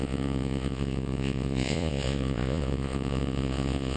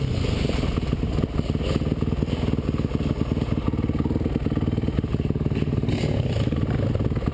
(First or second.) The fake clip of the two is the first